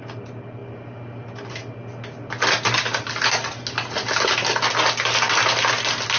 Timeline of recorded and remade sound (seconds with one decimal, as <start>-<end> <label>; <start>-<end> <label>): 0.0-6.2 recorded